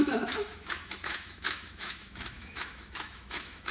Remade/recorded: remade